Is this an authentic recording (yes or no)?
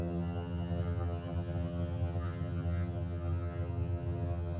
no